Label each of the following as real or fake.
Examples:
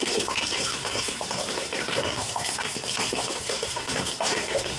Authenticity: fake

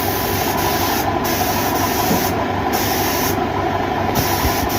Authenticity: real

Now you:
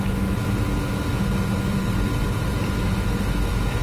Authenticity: real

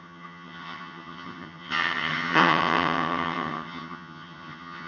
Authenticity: fake